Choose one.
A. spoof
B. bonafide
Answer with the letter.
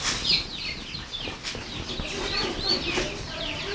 B